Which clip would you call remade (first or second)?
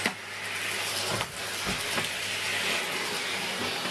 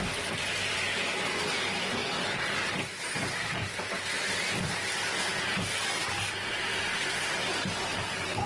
second